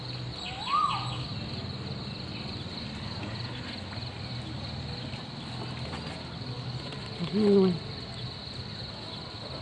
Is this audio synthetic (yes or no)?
no